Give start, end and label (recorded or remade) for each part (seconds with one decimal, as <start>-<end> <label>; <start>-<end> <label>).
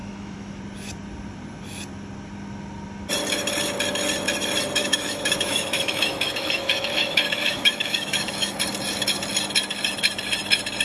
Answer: 0.0-0.6 remade; 0.6-4.8 recorded; 4.8-8.5 remade; 8.5-10.8 recorded